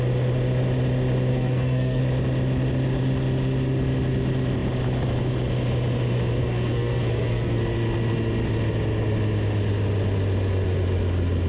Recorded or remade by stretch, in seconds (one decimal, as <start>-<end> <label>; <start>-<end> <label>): 0.0-1.3 recorded; 1.3-2.0 remade; 2.0-6.4 recorded; 6.4-7.6 remade; 7.6-11.5 recorded